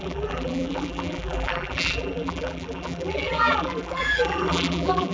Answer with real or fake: fake